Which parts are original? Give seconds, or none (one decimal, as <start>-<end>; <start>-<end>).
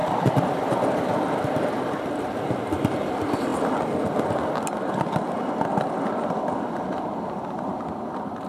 0.0-8.5